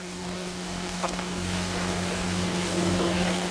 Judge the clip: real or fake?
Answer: fake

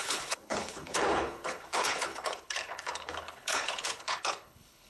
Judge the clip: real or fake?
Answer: fake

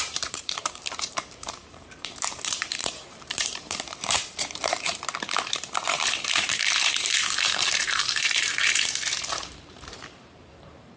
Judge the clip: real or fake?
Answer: fake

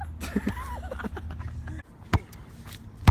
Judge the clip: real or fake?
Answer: real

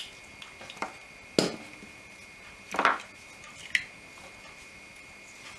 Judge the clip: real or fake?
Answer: real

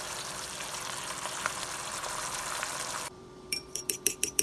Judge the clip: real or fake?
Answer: fake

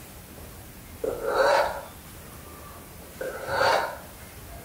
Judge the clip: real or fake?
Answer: real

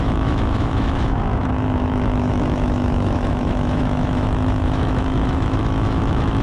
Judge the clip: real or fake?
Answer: fake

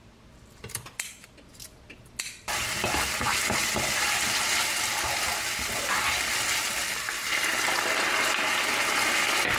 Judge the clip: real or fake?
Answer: real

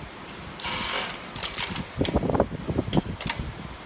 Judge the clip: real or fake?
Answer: real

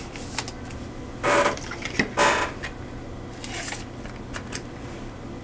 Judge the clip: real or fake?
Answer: real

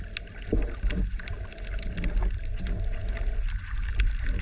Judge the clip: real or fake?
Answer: real